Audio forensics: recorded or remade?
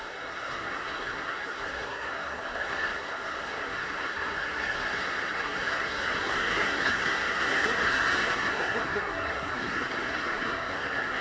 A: remade